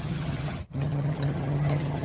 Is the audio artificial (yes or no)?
yes